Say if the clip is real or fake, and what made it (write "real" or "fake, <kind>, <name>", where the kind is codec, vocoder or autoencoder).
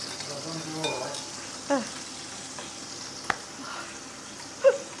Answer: real